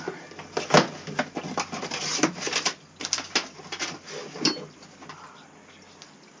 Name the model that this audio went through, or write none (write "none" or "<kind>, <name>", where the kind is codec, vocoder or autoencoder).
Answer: none